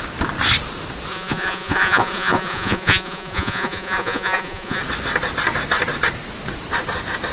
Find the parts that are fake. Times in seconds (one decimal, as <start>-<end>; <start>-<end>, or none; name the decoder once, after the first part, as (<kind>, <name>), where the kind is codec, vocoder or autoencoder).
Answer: 1.1-4.8 (vocoder, Vocos)